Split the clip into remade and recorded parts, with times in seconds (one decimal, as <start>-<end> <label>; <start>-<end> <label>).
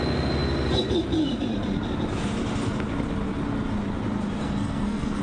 0.0-4.4 recorded; 4.4-5.2 remade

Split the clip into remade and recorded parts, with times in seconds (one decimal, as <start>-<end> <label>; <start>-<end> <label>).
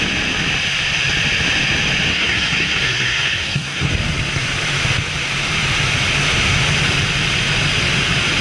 0.0-2.1 recorded; 2.1-3.9 remade; 3.9-8.4 recorded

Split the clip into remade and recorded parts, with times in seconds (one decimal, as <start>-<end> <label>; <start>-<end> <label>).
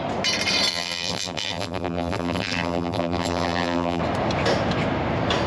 0.0-0.7 recorded; 0.7-4.0 remade; 4.0-5.5 recorded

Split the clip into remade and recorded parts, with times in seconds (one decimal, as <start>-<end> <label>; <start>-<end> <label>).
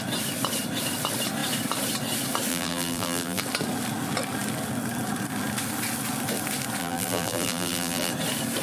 0.0-2.5 recorded; 2.5-3.4 remade; 3.4-6.8 recorded; 6.8-8.1 remade; 8.1-8.6 recorded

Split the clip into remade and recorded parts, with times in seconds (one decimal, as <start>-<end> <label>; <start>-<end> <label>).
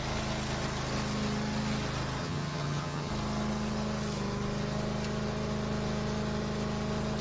0.0-2.2 recorded; 2.2-3.1 remade; 3.1-7.2 recorded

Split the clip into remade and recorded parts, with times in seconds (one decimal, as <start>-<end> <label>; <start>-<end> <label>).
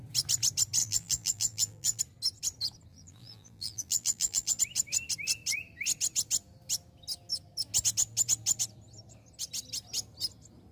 0.0-0.8 recorded; 0.8-2.0 remade; 2.0-2.9 recorded; 2.9-4.6 remade; 4.6-10.7 recorded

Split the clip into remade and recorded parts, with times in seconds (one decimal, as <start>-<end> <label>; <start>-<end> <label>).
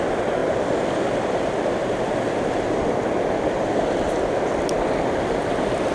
0.0-5.9 recorded